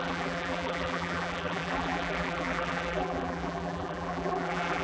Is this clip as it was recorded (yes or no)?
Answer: no